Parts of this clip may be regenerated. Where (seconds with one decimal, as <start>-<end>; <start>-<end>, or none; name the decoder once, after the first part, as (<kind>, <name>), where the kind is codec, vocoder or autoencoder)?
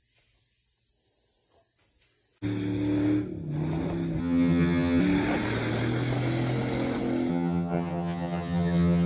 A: 4.2-5.0 (vocoder, HiFi-GAN); 7.3-9.1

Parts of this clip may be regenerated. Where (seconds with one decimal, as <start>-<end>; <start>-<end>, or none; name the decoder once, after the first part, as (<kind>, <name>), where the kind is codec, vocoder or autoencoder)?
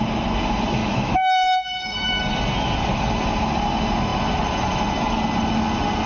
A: 0.8-2.2 (autoencoder, DAC-VAE)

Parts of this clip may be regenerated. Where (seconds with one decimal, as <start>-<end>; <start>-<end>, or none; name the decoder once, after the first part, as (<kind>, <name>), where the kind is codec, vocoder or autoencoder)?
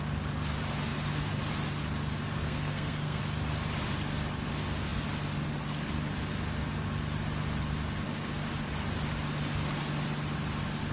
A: 2.4-3.2 (codec, SNAC)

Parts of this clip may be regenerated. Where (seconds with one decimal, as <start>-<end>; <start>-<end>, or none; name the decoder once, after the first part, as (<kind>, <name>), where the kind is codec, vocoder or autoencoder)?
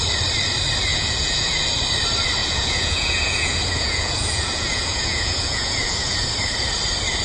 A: 0.9-1.7 (vocoder, Vocos); 2.4-6.3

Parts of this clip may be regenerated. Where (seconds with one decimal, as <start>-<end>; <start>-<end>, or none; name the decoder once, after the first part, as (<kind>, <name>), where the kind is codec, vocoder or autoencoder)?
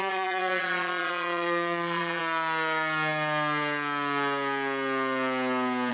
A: 0.0-2.2 (vocoder, Vocos)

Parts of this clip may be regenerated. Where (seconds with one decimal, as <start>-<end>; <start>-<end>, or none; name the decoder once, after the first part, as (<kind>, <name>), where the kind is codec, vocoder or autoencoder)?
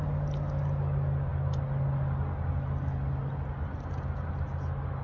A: none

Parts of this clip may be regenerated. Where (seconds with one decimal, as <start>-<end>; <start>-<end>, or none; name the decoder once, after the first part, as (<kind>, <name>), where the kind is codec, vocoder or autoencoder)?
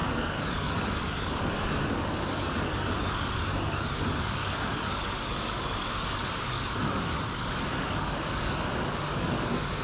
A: 0.0-9.8 (codec, DAC)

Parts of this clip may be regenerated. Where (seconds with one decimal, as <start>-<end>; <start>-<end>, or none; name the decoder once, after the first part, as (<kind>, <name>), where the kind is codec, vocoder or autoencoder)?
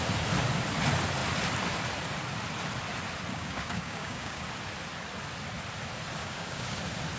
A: 3.3-4.4 (codec, DAC); 6.2-6.8